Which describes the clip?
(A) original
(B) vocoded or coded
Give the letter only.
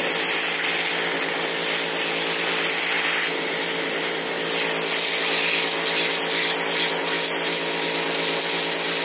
A